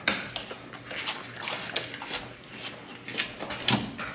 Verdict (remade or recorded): recorded